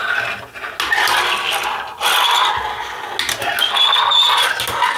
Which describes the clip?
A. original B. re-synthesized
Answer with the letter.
A